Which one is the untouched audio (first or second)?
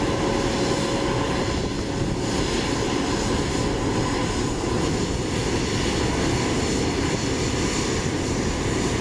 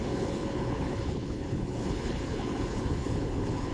first